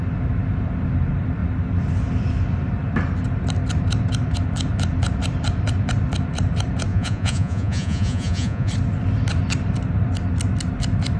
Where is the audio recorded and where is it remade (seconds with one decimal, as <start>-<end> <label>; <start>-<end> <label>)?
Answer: 0.0-6.9 recorded; 6.9-8.7 remade; 8.7-11.2 recorded